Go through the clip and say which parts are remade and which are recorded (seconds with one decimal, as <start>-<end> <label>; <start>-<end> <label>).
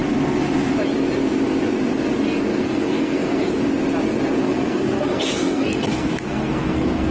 0.0-2.5 recorded; 2.5-3.6 remade; 3.6-4.4 recorded; 4.4-7.1 remade